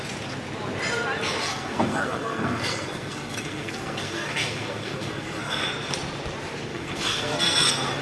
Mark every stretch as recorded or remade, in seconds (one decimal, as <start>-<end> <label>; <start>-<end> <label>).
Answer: 0.0-1.4 recorded; 1.4-5.7 remade; 5.7-6.7 recorded; 6.7-8.0 remade